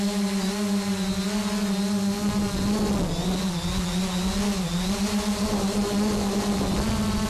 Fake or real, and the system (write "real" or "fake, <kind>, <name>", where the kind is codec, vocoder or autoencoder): real